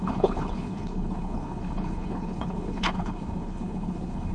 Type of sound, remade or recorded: remade